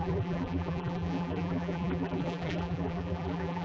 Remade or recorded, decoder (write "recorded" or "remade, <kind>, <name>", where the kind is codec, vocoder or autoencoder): remade, vocoder, BigVGAN v2